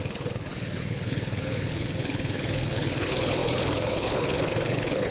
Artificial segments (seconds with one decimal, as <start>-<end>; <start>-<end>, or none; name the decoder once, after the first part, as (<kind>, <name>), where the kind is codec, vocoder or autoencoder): 0.0-5.1 (codec, HILCodec)